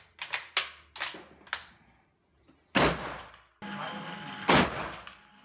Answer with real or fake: real